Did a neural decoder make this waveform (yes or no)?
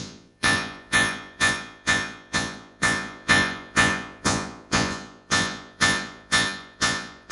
yes